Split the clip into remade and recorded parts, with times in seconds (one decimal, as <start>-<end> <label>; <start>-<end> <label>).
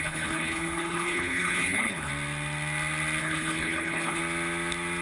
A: 0.0-2.1 remade; 2.1-3.2 recorded; 3.2-4.2 remade; 4.2-5.0 recorded